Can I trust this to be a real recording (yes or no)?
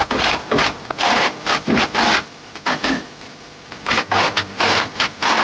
yes